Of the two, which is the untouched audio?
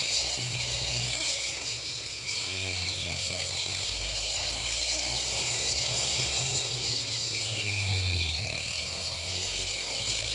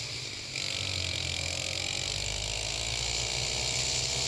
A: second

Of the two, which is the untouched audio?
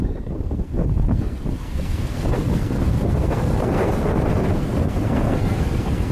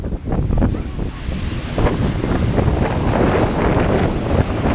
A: second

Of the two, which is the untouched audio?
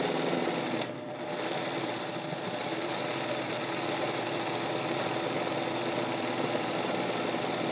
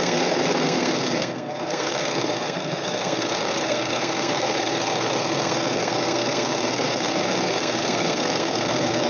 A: first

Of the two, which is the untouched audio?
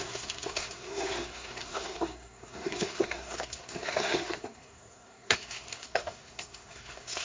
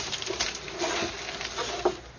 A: second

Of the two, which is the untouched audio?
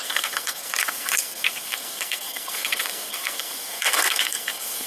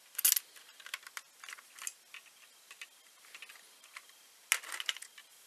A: second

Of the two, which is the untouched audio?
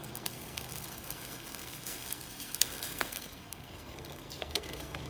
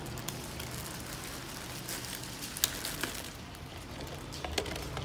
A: second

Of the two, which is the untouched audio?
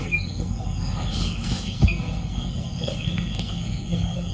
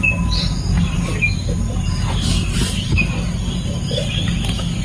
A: second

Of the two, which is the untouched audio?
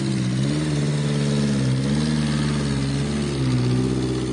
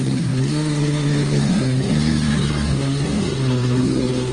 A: first